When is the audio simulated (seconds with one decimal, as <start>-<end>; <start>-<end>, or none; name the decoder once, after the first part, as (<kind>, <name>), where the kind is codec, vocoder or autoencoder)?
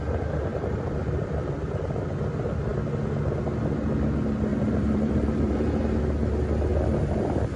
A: 0.5-2.2 (vocoder, BigVGAN v2); 4.5-6.0